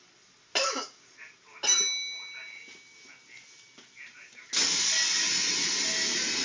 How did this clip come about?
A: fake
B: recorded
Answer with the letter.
B